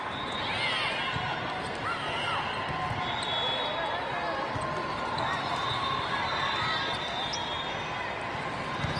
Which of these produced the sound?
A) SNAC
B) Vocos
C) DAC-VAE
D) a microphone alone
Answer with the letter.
D